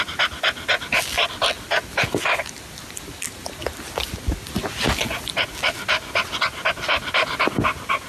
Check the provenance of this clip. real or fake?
real